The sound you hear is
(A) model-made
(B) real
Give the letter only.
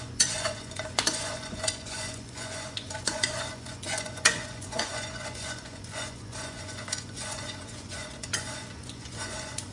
A